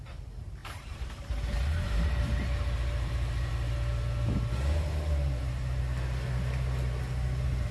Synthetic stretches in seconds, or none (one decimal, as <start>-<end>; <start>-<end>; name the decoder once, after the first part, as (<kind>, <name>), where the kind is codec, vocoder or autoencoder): 0.6-3.5 (vocoder, BigVGAN v2)